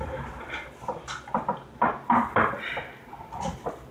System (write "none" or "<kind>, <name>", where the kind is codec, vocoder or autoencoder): none